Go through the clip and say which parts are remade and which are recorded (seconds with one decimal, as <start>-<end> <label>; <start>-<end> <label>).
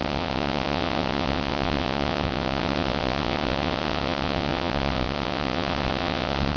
0.0-6.6 remade